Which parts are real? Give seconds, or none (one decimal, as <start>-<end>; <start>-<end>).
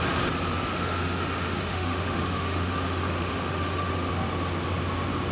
0.0-0.7; 3.9-5.3